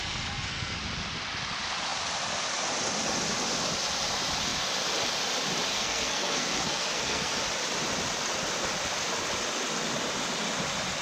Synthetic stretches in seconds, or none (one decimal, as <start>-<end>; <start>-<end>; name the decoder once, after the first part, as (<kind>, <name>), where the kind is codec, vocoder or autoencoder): 0.0-0.8 (codec, SNAC); 5.7-7.4

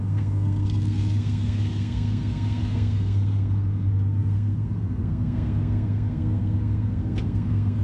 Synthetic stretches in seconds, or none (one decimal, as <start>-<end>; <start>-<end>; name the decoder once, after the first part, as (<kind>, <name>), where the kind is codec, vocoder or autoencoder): 0.0-7.8 (codec, SNAC)

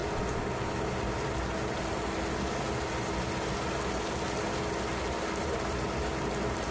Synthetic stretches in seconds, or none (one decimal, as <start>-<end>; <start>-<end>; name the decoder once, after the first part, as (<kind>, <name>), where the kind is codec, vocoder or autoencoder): none

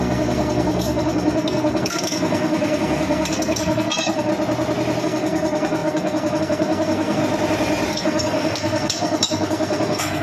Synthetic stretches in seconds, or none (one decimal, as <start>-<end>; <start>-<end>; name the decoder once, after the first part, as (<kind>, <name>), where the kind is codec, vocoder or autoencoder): 0.0-4.3 (codec, SNAC); 5.0-7.2; 7.9-10.2

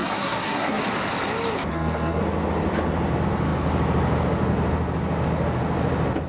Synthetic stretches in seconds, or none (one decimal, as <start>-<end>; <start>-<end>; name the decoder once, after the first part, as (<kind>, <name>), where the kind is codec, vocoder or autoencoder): 0.0-0.8 (codec, SNAC); 1.7-2.2

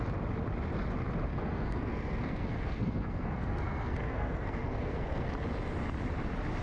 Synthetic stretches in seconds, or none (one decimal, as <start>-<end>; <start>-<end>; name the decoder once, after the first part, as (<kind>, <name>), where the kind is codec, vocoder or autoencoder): 1.3-5.3 (codec, SNAC)

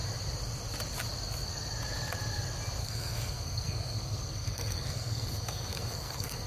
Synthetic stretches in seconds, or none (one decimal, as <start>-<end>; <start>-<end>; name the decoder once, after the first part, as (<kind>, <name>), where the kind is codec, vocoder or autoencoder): 2.8-6.5 (codec, SNAC)